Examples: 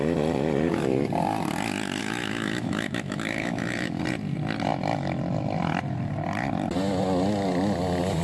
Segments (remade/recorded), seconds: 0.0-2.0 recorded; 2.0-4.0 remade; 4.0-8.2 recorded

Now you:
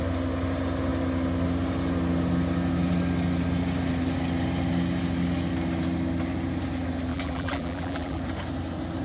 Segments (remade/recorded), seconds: 0.0-7.1 recorded; 7.1-8.2 remade; 8.2-9.0 recorded

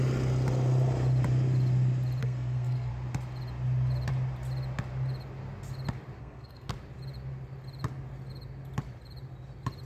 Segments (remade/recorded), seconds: 0.0-2.2 recorded; 2.2-2.9 remade; 2.9-6.2 recorded; 6.2-6.7 remade; 6.7-9.9 recorded

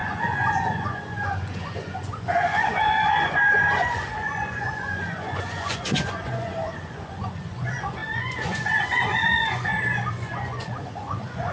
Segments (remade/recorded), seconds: 0.0-11.5 remade